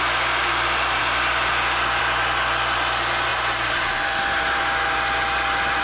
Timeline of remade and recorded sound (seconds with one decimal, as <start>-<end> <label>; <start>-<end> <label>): 0.0-3.3 recorded; 3.3-4.2 remade; 4.2-5.8 recorded